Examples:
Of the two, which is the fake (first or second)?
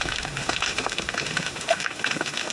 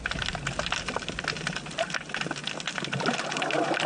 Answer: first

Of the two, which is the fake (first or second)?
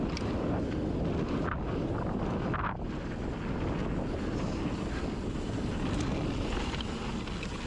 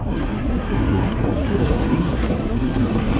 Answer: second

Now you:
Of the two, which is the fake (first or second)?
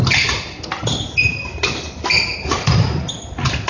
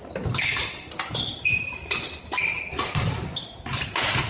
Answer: second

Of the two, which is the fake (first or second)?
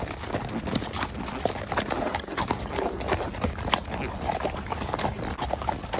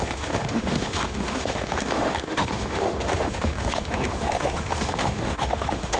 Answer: second